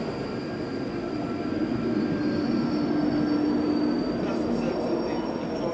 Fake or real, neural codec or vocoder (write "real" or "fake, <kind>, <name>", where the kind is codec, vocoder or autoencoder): real